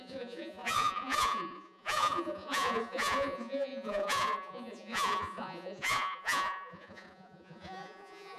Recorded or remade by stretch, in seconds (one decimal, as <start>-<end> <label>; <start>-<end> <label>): 0.0-8.4 remade